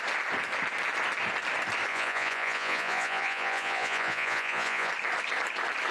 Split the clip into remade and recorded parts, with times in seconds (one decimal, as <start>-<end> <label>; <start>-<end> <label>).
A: 0.0-1.9 recorded; 1.9-4.9 remade; 4.9-5.9 recorded